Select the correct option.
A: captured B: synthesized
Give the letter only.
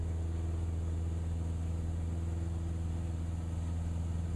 A